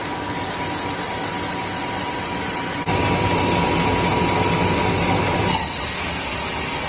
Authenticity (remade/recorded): recorded